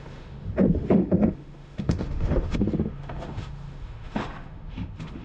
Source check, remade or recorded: remade